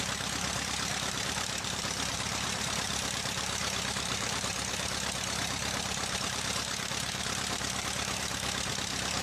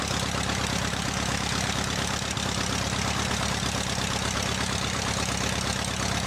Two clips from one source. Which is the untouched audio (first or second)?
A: second